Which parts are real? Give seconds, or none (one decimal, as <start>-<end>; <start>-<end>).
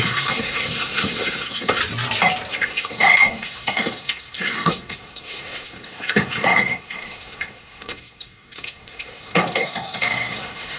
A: 1.8-2.5